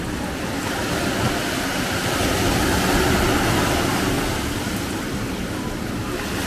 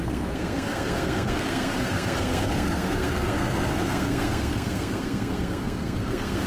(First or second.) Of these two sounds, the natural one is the first